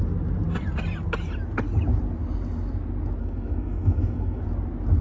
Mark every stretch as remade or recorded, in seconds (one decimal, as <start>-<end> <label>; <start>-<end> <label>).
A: 0.0-3.2 recorded; 3.2-4.4 remade; 4.4-5.0 recorded